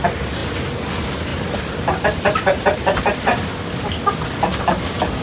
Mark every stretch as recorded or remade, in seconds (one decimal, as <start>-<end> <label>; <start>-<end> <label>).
0.0-1.3 recorded; 1.3-4.4 remade; 4.4-5.2 recorded